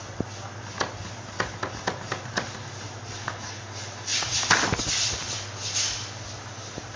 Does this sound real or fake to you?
real